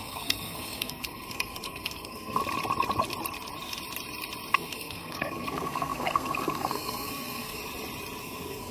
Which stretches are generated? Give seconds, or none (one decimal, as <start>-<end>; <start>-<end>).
0.0-2.4; 4.5-7.6; 8.2-8.7